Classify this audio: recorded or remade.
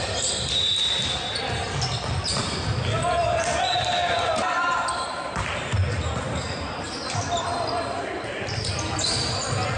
remade